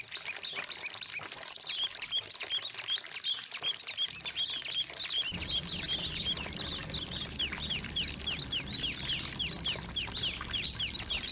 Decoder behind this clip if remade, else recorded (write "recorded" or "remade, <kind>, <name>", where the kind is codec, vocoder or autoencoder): recorded